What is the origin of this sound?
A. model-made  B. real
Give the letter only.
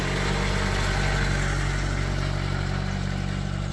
B